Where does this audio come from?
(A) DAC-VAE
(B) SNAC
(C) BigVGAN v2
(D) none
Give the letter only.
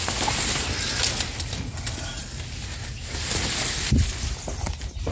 D